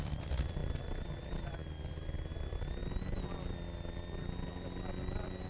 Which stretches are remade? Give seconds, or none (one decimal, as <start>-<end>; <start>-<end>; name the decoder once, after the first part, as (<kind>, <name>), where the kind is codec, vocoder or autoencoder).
0.0-2.8 (vocoder, BigVGAN v2); 4.5-5.5